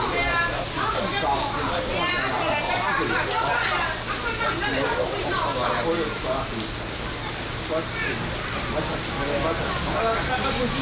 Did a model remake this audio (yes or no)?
no